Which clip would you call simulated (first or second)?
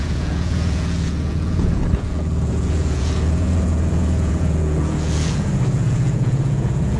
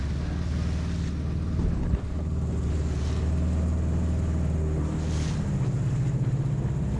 first